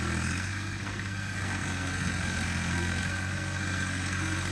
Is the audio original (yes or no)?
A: no